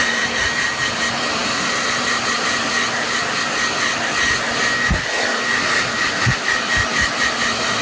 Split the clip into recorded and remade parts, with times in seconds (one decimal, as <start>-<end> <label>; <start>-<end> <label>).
0.0-1.4 remade; 1.4-4.9 recorded; 4.9-7.8 remade